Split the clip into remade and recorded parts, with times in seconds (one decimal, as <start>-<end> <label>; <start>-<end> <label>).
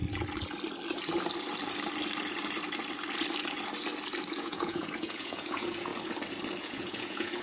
0.0-4.4 recorded; 4.4-5.9 remade; 5.9-6.6 recorded; 6.6-7.4 remade